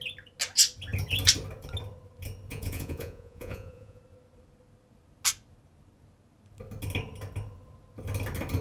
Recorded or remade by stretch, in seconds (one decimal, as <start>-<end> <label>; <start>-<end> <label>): 0.0-2.5 recorded; 2.5-4.0 remade; 4.0-8.6 recorded